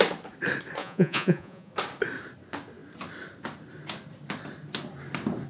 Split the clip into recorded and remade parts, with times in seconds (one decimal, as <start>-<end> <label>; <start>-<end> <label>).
0.0-0.8 recorded; 0.8-1.7 remade; 1.7-5.5 recorded